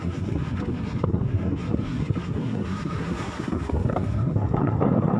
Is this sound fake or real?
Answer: fake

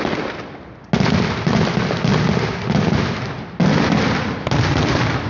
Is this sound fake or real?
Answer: real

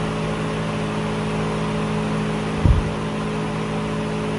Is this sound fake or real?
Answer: real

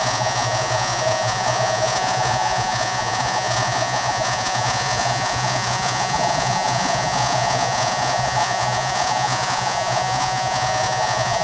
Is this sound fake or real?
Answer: fake